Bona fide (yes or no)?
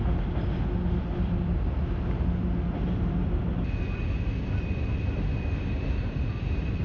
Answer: yes